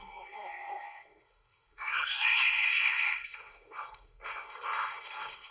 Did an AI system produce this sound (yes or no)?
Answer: yes